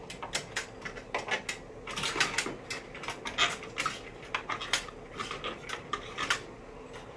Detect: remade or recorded recorded